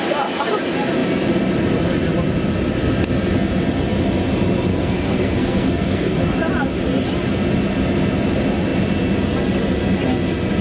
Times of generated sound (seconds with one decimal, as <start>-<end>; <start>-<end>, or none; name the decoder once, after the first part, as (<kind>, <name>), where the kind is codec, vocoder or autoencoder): 4.7-6.3 (codec, SNAC)